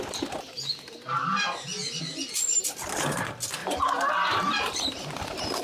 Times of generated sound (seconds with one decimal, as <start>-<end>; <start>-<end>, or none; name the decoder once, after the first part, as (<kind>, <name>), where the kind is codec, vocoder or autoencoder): 3.6-5.6 (vocoder, BigVGAN v2)